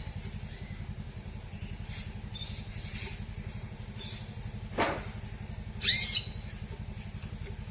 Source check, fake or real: real